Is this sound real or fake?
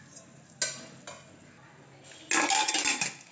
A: real